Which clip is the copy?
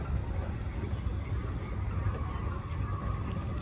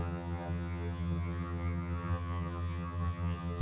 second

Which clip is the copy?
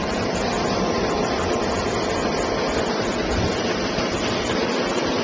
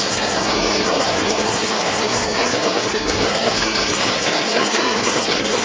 second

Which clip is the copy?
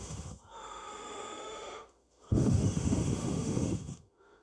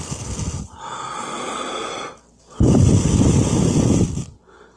first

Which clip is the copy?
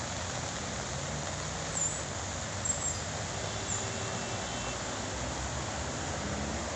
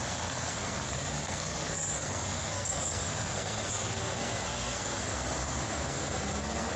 second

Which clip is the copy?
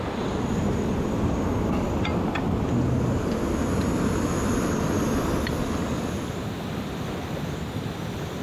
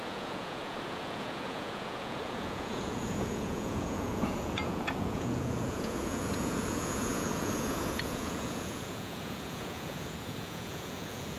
second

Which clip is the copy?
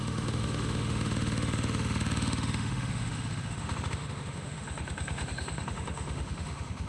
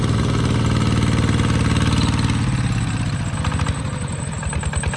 first